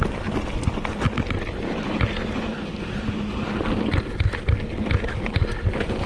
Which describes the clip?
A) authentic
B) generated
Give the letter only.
A